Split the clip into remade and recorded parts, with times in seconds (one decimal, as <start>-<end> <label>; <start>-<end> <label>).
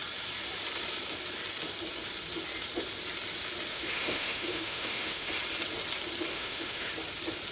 0.0-3.7 recorded; 3.7-5.3 remade; 5.3-6.3 recorded; 6.3-6.9 remade; 6.9-7.5 recorded